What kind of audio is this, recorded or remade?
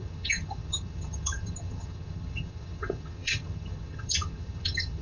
remade